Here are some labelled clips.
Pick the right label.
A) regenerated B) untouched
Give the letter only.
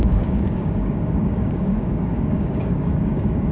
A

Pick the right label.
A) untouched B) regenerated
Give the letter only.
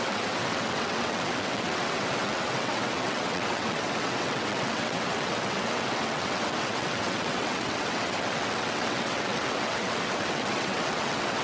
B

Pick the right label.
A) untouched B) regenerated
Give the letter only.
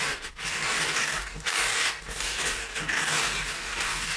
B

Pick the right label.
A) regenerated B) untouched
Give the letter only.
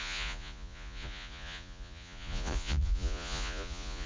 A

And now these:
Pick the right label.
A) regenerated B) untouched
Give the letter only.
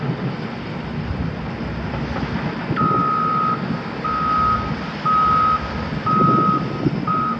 B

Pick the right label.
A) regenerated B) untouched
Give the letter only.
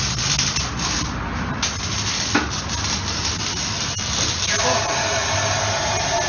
B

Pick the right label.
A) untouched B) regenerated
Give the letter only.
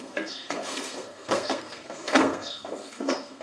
B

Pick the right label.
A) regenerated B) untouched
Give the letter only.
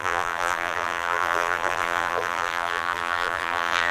A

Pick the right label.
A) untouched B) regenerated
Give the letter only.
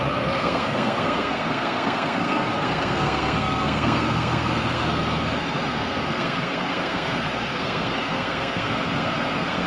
B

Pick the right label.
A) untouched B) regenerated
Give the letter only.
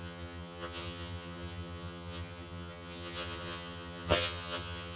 B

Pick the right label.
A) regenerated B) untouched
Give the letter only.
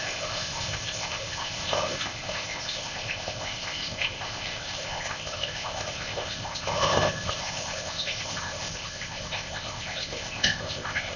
A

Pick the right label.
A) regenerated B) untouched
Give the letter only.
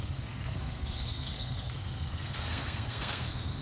A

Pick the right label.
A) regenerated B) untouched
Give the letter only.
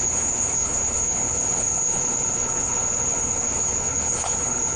A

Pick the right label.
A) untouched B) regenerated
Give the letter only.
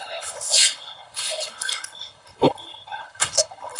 B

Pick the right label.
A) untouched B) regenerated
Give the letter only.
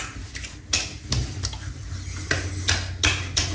A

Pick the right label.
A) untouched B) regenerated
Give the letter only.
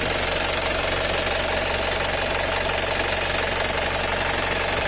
A